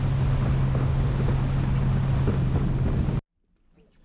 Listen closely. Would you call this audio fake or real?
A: real